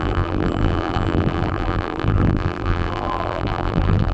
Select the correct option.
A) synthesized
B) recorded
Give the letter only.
A